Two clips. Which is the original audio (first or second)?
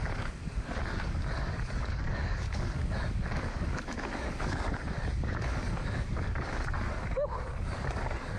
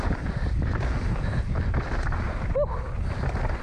second